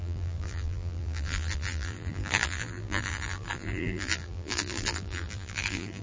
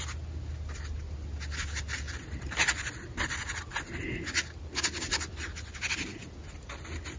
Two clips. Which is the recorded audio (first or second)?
second